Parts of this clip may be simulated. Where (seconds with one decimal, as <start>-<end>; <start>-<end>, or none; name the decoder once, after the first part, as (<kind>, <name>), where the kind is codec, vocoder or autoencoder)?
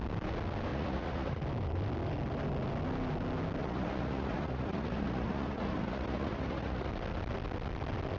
0.7-1.4 (vocoder, Vocos); 3.6-6.9